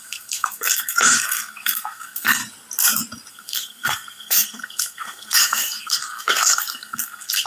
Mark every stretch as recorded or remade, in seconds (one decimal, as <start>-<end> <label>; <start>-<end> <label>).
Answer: 0.0-2.4 remade; 2.4-3.3 recorded; 3.3-7.5 remade